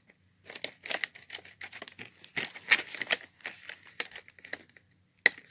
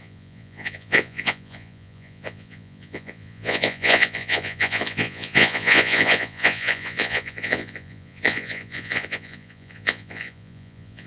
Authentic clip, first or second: first